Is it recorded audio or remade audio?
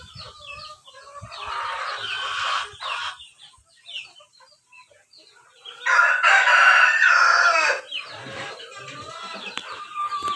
recorded